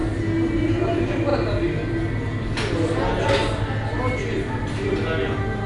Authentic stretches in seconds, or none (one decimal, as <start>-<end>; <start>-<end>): 0.0-5.7